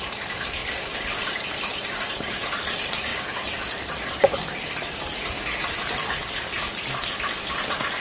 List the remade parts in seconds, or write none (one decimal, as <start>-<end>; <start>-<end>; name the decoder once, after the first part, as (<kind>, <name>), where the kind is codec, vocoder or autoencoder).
0.0-0.6 (vocoder, BigVGAN v2); 1.3-3.1; 7.5-8.0

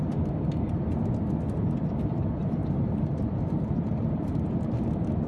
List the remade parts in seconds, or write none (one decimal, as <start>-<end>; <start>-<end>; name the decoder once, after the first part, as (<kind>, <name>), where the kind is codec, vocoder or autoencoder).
2.6-4.3 (vocoder, BigVGAN v2)

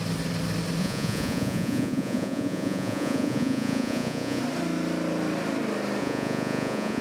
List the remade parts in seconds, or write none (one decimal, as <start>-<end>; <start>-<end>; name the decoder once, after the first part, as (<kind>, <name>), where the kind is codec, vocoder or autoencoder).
0.8-4.4 (vocoder, Vocos); 6.0-7.0

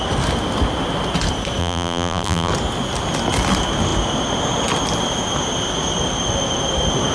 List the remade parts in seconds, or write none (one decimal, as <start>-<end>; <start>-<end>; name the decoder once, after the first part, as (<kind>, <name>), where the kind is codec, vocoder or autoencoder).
1.6-2.5 (vocoder, BigVGAN v2)

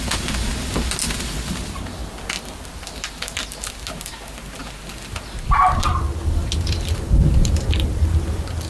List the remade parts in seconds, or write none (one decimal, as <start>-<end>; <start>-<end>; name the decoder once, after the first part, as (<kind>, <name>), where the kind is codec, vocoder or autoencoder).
none

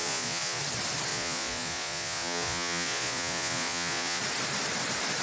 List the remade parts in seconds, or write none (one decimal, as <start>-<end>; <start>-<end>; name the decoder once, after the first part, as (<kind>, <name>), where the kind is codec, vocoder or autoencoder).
0.0-0.6 (vocoder, Vocos); 1.1-4.2

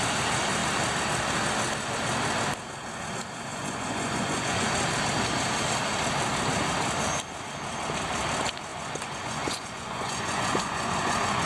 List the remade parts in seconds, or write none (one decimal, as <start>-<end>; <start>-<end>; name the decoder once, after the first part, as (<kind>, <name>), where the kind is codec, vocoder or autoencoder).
3.5-4.7 (vocoder, Vocos); 8.7-11.5

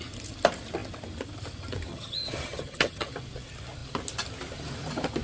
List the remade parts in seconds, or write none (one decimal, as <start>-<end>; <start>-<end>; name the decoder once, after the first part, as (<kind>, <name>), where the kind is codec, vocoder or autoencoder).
1.9-3.1 (vocoder, HiFi-GAN)